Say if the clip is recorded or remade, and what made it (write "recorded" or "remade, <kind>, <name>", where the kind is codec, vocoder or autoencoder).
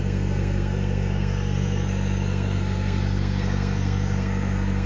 remade, codec, SNAC